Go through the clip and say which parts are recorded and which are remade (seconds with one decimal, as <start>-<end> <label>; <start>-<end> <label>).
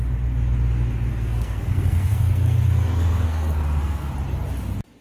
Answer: 0.0-1.1 recorded; 1.1-4.1 remade; 4.1-5.0 recorded